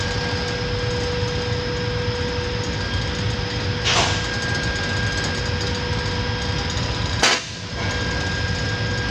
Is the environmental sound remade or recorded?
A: recorded